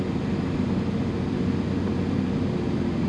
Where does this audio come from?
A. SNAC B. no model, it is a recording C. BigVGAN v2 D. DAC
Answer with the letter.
B